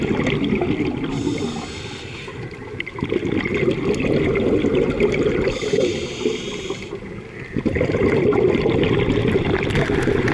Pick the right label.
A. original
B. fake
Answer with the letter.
A